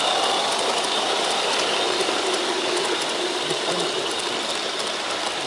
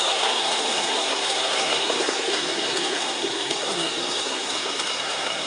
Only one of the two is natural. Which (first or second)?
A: first